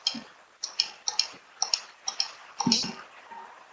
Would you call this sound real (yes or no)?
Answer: yes